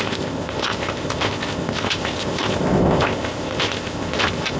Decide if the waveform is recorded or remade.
remade